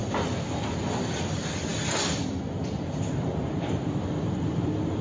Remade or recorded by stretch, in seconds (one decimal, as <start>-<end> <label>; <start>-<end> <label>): 0.0-5.0 recorded